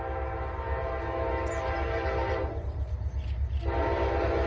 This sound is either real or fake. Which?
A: real